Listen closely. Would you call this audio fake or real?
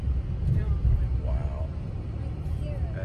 real